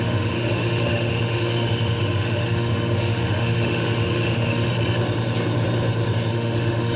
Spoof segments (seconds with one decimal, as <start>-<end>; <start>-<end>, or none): 0.0-4.7; 6.3-7.0